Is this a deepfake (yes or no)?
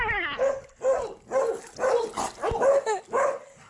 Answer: no